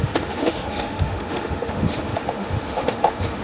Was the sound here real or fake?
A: fake